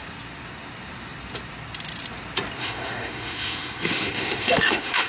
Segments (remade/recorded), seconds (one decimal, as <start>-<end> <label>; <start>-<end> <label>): 0.0-2.6 recorded; 2.6-5.1 remade